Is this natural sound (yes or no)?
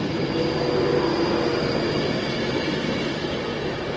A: yes